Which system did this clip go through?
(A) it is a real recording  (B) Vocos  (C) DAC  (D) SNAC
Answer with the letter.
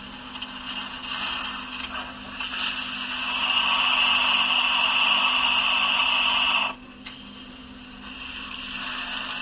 A